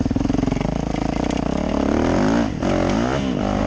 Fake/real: real